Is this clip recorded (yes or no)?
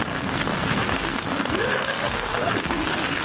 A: no